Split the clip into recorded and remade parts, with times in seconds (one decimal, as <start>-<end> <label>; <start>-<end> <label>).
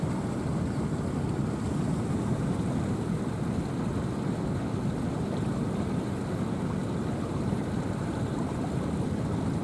0.0-9.6 recorded